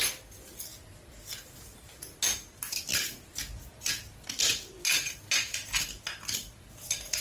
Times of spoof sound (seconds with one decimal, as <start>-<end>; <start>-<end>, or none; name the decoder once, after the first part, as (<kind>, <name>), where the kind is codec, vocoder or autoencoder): none